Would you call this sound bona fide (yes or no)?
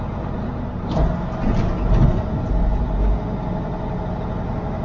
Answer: yes